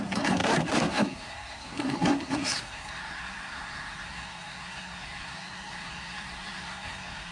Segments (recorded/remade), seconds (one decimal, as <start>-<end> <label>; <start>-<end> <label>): 0.0-7.3 remade